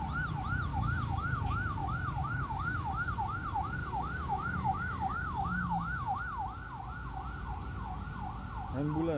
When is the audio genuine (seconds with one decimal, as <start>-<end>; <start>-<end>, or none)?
0.0-0.7; 1.4-1.8; 2.9-3.8; 6.2-9.2